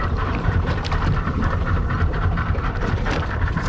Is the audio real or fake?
fake